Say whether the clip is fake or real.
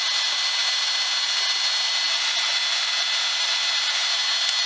real